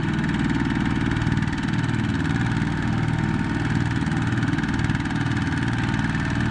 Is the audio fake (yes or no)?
no